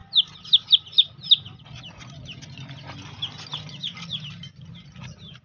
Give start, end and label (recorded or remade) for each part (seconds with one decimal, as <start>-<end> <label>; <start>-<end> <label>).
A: 0.0-5.4 recorded